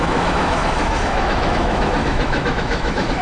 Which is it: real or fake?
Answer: fake